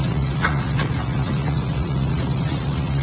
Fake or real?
fake